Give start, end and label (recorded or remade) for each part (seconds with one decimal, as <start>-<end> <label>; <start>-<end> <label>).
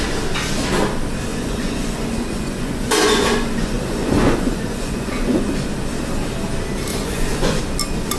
0.0-1.3 recorded; 1.3-5.4 remade; 5.4-6.9 recorded; 6.9-7.6 remade; 7.6-8.2 recorded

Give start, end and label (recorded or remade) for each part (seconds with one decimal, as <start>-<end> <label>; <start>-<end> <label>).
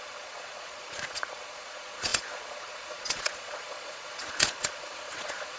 0.0-5.6 remade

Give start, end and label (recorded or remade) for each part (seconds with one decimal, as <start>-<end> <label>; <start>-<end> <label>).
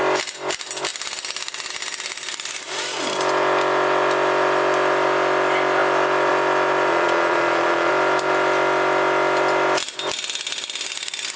0.0-6.9 recorded; 6.9-7.9 remade; 7.9-11.4 recorded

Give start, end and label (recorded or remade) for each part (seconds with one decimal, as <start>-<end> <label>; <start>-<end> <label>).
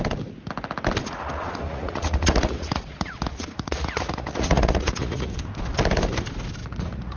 0.0-1.0 recorded; 1.0-5.3 remade; 5.3-6.6 recorded; 6.6-7.2 remade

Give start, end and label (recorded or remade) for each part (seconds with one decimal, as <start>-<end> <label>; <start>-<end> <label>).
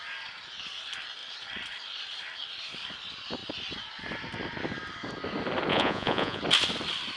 0.0-5.7 recorded; 5.7-6.4 remade; 6.4-7.2 recorded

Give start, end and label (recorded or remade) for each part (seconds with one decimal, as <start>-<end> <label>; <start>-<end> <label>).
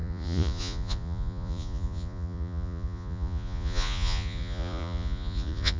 0.0-5.8 remade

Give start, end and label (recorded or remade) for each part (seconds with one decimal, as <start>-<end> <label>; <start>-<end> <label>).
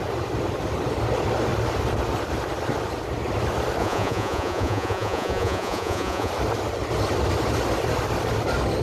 0.0-3.8 recorded; 3.8-6.3 remade; 6.3-8.8 recorded